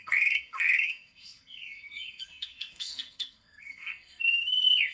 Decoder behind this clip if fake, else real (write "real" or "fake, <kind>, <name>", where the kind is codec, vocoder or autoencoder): fake, codec, SNAC